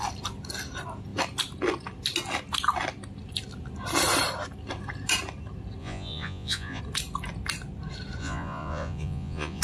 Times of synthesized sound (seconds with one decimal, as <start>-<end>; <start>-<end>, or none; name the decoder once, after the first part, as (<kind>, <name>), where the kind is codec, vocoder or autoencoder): 5.8-6.8 (vocoder, Vocos); 8.2-9.6